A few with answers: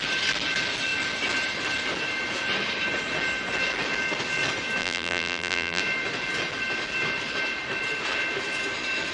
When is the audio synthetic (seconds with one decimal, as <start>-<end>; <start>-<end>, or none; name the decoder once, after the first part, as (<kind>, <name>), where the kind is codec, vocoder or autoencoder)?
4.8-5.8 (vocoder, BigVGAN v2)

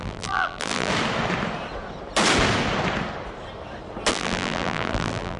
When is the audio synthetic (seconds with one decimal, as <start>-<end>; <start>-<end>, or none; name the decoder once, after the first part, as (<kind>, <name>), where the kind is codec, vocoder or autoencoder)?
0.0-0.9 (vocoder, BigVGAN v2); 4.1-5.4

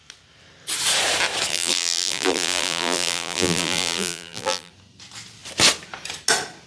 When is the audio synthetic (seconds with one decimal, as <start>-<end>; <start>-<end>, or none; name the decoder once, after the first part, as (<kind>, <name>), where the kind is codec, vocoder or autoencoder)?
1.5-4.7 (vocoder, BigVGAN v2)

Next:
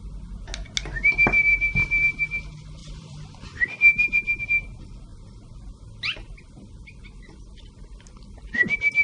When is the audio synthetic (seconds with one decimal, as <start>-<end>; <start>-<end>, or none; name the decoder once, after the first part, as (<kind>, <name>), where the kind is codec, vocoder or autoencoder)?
2.8-4.4 (vocoder, BigVGAN v2)

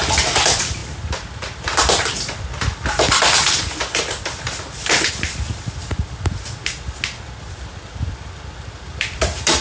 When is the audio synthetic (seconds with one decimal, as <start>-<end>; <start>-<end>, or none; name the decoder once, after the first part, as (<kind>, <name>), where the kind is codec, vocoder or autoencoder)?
0.0-5.8 (vocoder, BigVGAN v2); 7.4-9.6

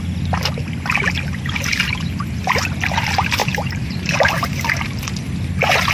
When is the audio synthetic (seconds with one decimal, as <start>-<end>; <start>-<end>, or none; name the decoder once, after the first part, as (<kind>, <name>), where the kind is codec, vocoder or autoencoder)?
3.4-5.0 (vocoder, BigVGAN v2)